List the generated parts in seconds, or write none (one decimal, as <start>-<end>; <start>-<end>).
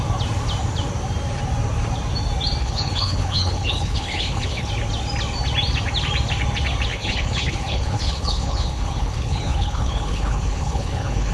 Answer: 2.6-4.7; 6.9-11.3